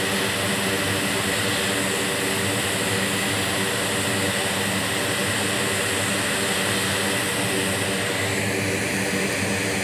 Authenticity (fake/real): real